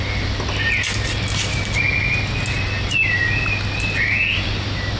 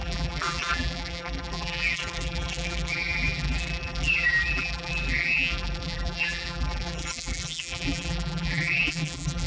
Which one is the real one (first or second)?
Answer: first